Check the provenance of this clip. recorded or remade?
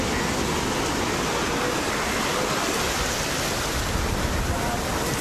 recorded